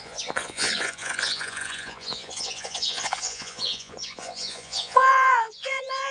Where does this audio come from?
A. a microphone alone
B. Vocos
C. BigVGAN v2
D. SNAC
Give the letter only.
B